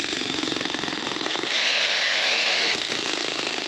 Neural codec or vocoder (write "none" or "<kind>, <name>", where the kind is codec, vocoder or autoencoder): autoencoder, DAC-VAE